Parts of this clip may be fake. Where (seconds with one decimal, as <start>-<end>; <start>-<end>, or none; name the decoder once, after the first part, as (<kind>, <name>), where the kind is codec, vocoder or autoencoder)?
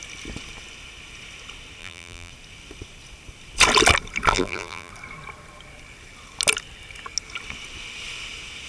1.8-2.3 (vocoder, BigVGAN v2); 4.3-4.9